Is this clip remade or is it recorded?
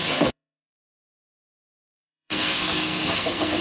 remade